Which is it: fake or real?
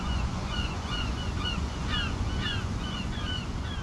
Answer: fake